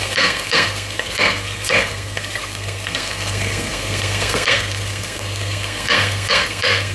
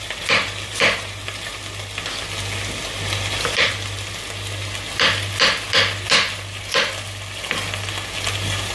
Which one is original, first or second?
second